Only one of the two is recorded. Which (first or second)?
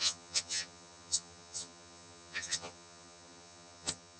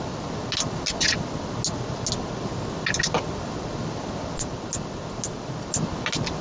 second